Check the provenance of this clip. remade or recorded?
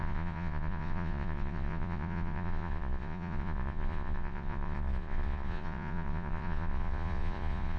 remade